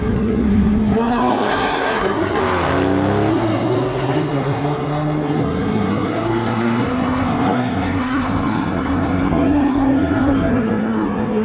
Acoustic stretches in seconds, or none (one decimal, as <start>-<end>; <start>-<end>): 2.4-3.3